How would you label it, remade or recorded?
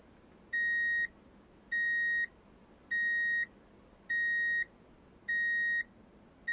recorded